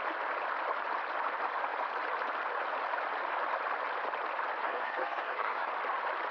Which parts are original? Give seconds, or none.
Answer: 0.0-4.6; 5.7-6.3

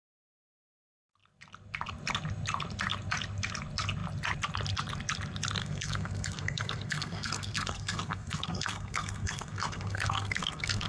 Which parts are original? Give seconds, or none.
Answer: 0.0-5.6

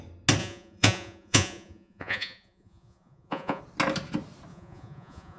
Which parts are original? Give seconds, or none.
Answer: 0.0-0.4; 3.6-4.5

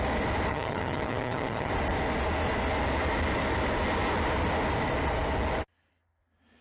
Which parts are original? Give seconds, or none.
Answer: 0.0-0.5; 1.7-6.6